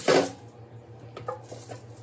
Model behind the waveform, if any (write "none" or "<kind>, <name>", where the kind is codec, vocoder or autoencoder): none